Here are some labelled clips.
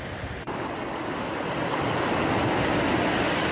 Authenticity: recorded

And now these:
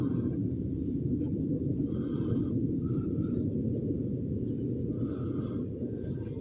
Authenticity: remade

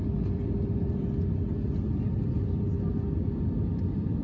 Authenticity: recorded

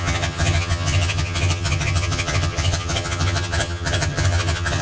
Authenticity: remade